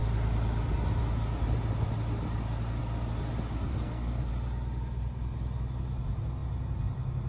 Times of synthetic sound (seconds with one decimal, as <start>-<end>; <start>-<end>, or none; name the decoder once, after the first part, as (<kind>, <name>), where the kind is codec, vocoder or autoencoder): 3.7-4.3 (codec, SNAC)